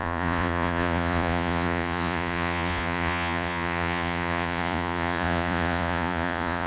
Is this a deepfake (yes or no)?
yes